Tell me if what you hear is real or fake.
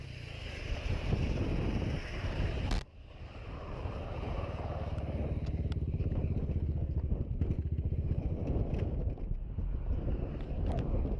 real